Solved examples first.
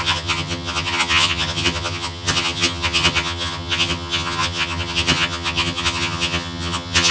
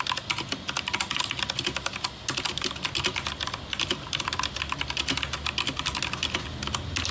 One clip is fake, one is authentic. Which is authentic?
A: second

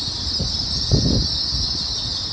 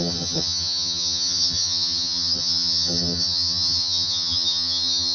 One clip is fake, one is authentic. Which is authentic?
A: first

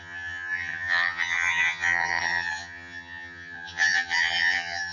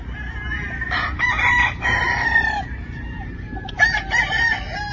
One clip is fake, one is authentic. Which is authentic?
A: second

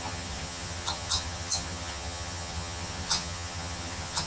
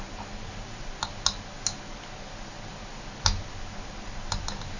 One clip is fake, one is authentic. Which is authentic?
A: second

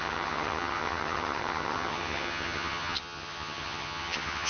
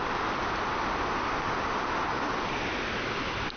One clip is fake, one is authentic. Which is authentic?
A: second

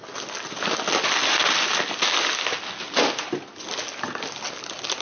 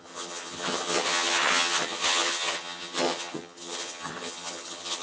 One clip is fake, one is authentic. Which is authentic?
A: first